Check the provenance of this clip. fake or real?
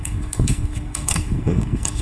fake